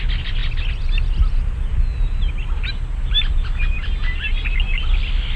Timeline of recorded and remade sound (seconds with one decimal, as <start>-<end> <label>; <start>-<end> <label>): 0.0-5.4 recorded